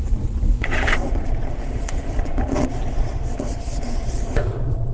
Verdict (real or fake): fake